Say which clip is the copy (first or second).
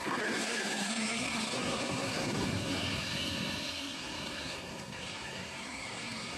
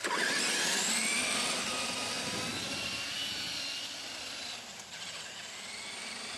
first